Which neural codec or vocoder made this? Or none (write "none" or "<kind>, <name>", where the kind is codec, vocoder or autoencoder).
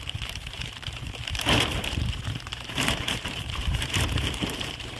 vocoder, BigVGAN v2